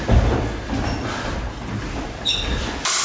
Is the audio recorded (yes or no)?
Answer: yes